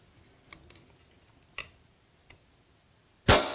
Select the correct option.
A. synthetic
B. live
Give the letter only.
B